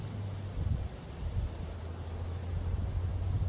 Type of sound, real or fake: real